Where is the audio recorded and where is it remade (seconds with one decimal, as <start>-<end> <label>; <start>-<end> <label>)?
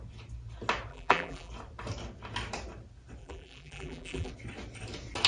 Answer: 0.0-0.9 recorded; 0.9-1.5 remade; 1.5-3.2 recorded; 3.2-4.3 remade; 4.3-5.3 recorded